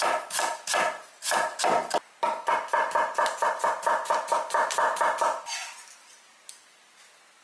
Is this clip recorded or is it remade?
recorded